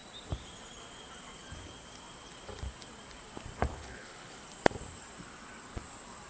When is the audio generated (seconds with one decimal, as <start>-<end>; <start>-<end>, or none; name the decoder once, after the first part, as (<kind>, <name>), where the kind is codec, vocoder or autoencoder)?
3.7-4.4 (codec, HILCodec)